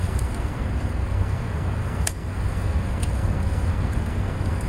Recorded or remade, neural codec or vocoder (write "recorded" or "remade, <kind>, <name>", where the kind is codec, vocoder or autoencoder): remade, codec, SNAC